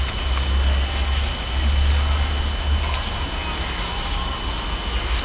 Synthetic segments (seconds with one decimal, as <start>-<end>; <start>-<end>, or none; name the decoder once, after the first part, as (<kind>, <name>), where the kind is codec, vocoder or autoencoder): none